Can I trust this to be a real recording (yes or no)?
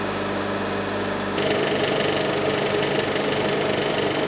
yes